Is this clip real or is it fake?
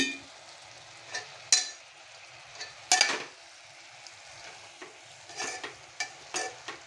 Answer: real